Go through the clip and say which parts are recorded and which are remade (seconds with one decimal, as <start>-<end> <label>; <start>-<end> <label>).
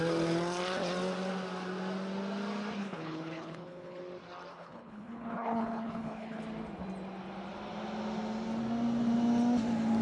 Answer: 0.0-2.8 recorded; 2.8-4.0 remade; 4.0-4.5 recorded; 4.5-6.4 remade; 6.4-10.0 recorded